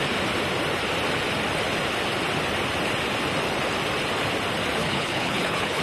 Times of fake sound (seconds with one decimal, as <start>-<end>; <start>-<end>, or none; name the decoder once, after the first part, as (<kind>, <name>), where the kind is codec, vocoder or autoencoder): 4.8-5.8 (codec, HILCodec)